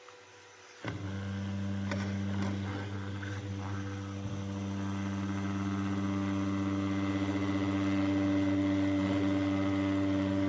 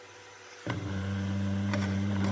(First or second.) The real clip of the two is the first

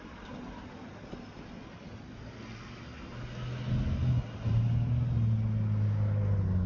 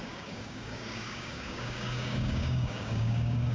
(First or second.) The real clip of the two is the first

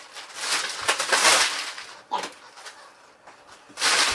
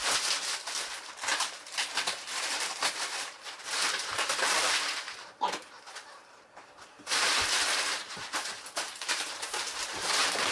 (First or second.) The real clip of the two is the first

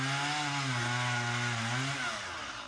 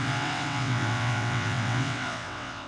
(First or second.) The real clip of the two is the first